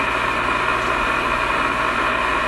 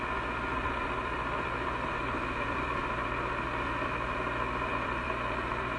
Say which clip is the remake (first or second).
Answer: second